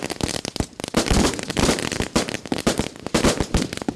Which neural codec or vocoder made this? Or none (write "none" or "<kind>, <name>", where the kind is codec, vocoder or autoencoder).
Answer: vocoder, BigVGAN v2